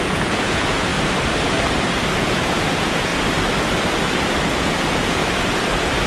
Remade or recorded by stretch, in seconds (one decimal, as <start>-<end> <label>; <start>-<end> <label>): 0.0-0.9 remade; 0.9-2.2 recorded; 2.2-3.1 remade; 3.1-4.5 recorded; 4.5-5.2 remade; 5.2-6.1 recorded